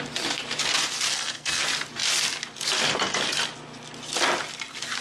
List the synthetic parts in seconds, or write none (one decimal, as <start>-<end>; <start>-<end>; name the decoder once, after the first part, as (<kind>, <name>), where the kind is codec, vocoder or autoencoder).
1.1-1.6 (codec, SNAC)